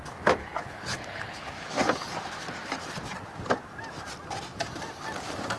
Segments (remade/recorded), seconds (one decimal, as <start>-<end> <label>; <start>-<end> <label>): 0.0-0.4 recorded; 0.4-1.7 remade; 1.7-5.6 recorded